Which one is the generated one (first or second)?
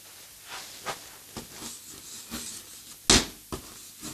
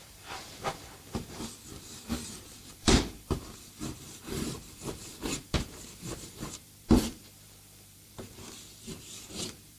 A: second